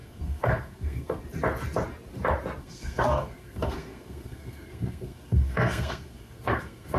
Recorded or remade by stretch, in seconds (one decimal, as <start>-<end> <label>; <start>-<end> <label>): 0.0-1.2 remade; 1.2-2.6 recorded; 2.6-7.0 remade